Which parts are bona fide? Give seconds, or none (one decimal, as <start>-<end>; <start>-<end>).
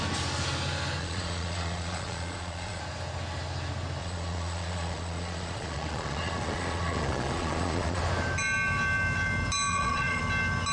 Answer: 0.0-1.0; 2.8-4.0; 8.0-9.7; 10.2-10.7